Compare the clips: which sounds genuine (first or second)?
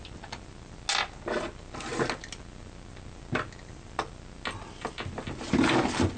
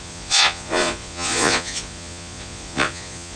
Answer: first